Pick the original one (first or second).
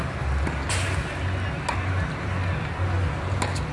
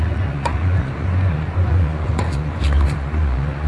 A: first